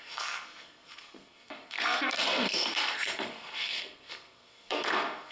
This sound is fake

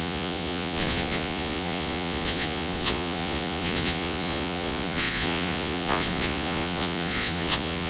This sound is fake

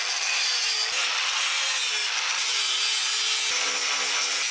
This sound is real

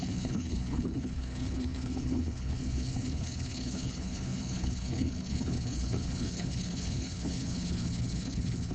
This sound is fake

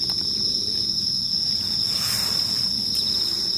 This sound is real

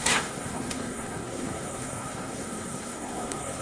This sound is fake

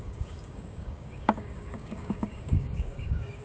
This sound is fake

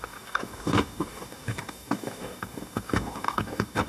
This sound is fake